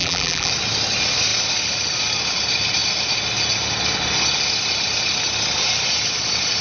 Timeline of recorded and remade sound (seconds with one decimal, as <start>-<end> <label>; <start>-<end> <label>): 0.0-0.5 remade; 0.5-6.6 recorded